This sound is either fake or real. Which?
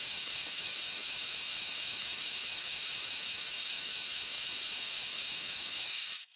fake